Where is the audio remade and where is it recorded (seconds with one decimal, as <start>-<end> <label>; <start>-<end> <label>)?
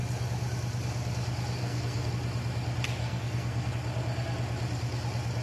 0.0-1.6 recorded; 1.6-2.1 remade; 2.1-3.0 recorded; 3.0-3.7 remade; 3.7-5.4 recorded